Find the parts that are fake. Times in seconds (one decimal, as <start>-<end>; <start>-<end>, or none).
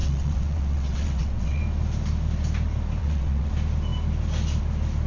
0.0-1.6; 3.0-3.5